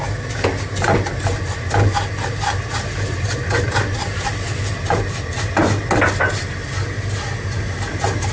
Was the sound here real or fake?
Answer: real